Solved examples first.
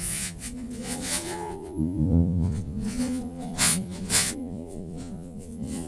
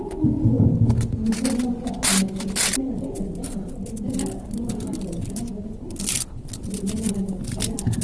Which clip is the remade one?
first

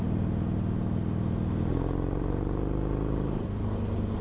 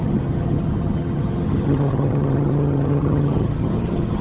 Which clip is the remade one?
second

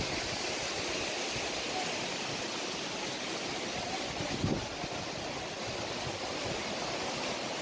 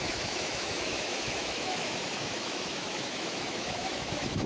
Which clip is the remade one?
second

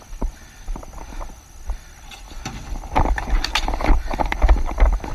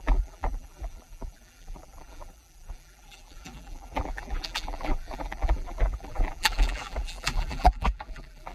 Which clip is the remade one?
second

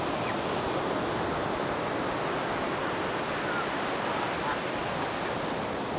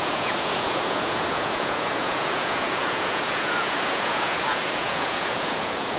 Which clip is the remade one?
second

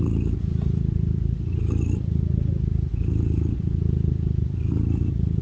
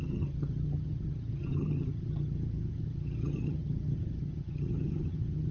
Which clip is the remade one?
second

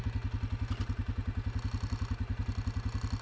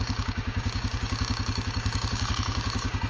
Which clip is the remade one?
second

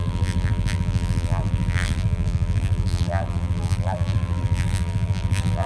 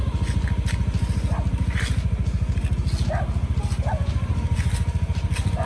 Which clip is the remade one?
first